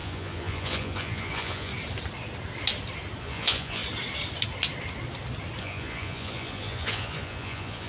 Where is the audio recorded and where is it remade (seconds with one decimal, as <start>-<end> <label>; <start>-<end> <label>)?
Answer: 0.0-1.7 remade; 1.7-3.2 recorded; 3.2-3.8 remade; 3.8-5.6 recorded; 5.6-7.9 remade